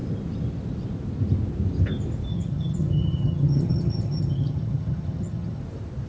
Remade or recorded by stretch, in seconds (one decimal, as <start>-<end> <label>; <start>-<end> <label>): 0.0-2.3 recorded; 2.3-5.6 remade; 5.6-6.1 recorded